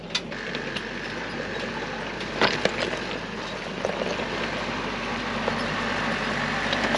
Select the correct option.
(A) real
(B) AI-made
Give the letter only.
A